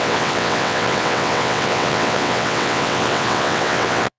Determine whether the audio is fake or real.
fake